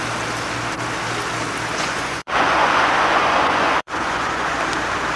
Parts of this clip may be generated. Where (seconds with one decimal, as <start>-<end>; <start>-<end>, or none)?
1.8-4.6